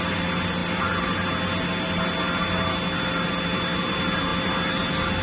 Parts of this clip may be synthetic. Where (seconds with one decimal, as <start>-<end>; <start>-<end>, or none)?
none